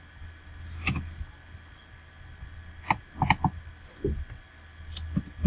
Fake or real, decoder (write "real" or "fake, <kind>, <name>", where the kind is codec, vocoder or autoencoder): real